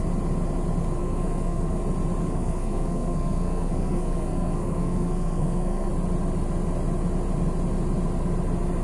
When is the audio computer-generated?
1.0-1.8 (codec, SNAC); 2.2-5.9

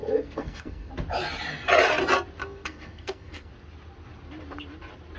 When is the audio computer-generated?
0.0-0.9 (codec, SNAC); 2.4-3.5

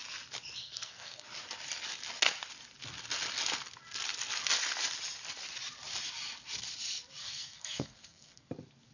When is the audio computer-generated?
0.6-1.2 (codec, SNAC); 7.2-8.5